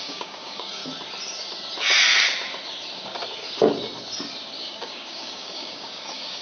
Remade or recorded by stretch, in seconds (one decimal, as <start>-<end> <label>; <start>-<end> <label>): 0.0-0.8 remade; 0.8-4.6 recorded; 4.6-6.4 remade